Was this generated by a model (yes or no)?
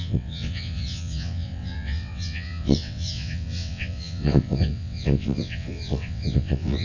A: yes